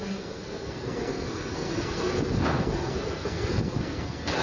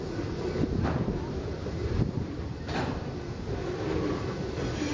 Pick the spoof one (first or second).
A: first